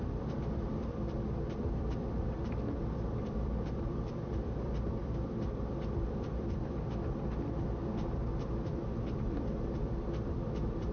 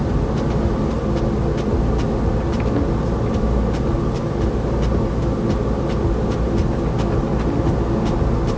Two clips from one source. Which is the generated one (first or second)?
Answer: first